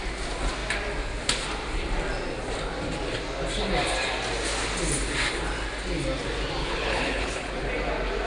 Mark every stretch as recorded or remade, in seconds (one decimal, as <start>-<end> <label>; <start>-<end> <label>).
0.0-6.6 recorded; 6.6-7.5 remade; 7.5-8.3 recorded